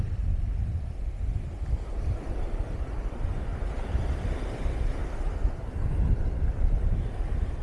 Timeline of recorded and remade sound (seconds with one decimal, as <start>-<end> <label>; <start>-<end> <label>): 0.0-3.5 remade; 3.5-4.4 recorded; 4.4-7.6 remade

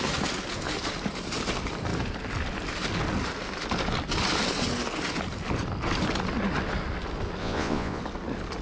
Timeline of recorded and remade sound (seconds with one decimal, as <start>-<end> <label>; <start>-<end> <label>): 0.0-7.4 recorded; 7.4-8.0 remade; 8.0-8.6 recorded

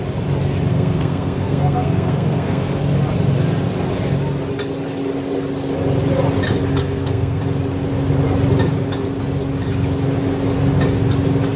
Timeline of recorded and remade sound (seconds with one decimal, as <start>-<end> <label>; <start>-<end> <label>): 0.0-0.7 recorded; 0.7-2.8 remade; 2.8-6.8 recorded; 6.8-7.4 remade; 7.4-11.6 recorded

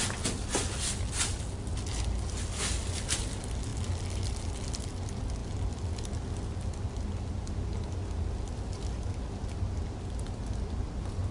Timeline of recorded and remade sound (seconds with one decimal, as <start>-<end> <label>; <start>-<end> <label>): 0.0-11.3 recorded

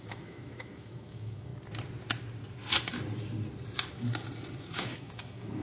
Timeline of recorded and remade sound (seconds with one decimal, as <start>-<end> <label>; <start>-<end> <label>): 0.0-1.5 remade; 1.5-4.6 recorded; 4.6-5.6 remade